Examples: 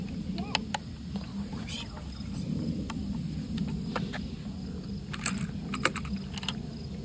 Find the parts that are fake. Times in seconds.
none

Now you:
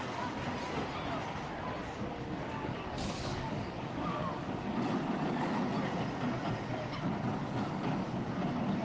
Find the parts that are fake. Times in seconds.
1.8-5.5 (codec, DAC); 7.4-8.3

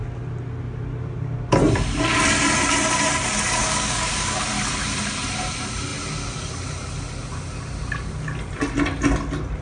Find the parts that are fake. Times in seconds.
3.6-4.4 (codec, DAC)

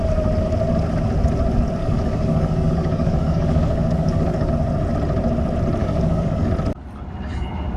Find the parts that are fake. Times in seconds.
1.8-4.5 (codec, DAC); 5.8-6.5

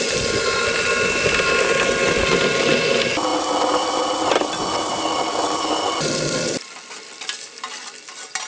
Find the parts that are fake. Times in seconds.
none

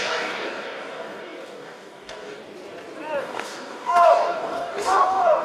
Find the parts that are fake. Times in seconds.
0.0-2.4 (codec, DAC); 3.2-5.4